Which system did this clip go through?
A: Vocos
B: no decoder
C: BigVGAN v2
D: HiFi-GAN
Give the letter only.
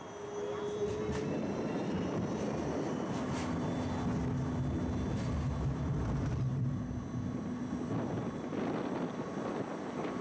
B